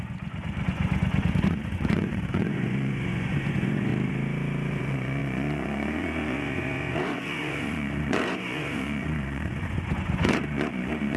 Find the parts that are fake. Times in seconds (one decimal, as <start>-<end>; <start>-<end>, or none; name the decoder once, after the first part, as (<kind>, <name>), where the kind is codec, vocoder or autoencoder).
0.0-3.9 (vocoder, Vocos); 4.8-11.2